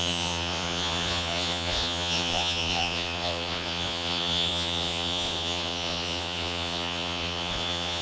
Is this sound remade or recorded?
remade